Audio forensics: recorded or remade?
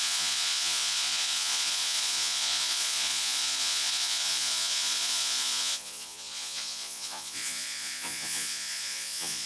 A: remade